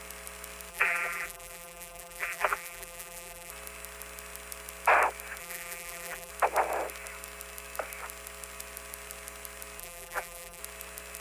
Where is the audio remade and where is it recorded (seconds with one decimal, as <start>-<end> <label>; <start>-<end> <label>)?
0.0-0.7 recorded; 0.7-3.5 remade; 3.5-5.4 recorded; 5.4-6.3 remade; 6.3-9.8 recorded; 9.8-10.6 remade; 10.6-11.2 recorded